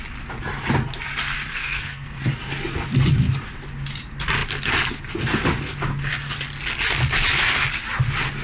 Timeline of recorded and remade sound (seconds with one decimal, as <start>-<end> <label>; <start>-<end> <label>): 0.0-1.5 recorded; 1.5-2.2 remade; 2.2-8.4 recorded